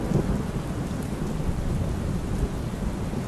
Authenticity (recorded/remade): recorded